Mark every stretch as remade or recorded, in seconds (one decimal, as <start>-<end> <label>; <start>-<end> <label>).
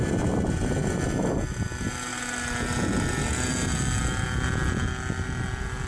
0.0-5.9 recorded